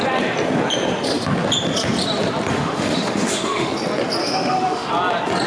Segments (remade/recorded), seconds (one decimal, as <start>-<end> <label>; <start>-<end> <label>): 0.0-2.5 recorded; 2.5-3.7 remade; 3.7-4.2 recorded; 4.2-4.9 remade; 4.9-5.5 recorded